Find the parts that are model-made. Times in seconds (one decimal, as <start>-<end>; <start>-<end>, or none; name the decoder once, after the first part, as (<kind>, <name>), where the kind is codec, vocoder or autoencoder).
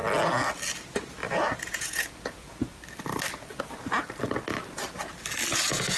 1.6-2.7 (vocoder, Vocos); 5.5-6.0